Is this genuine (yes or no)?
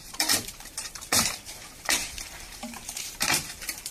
no